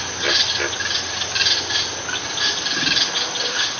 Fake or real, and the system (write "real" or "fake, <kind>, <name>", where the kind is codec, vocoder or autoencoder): real